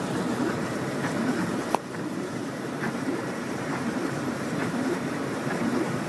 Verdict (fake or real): fake